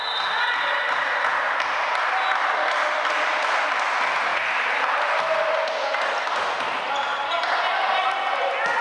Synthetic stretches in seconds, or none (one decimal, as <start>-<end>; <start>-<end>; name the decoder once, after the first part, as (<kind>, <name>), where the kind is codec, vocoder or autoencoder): 4.3-5.0 (vocoder, BigVGAN v2)